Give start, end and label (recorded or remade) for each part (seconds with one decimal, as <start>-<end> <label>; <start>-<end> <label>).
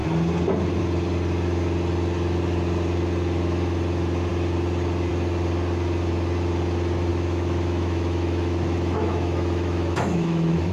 0.0-7.1 recorded; 7.1-10.7 remade